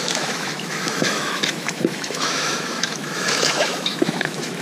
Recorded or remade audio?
remade